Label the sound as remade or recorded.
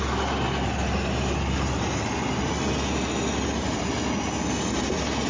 recorded